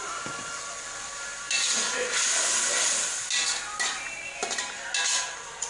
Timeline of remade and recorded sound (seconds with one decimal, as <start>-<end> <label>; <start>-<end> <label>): 0.0-1.7 remade; 1.7-5.1 recorded; 5.1-5.7 remade